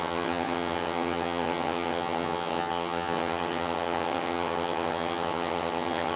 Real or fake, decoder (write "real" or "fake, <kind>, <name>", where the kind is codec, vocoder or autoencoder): fake, vocoder, HiFi-GAN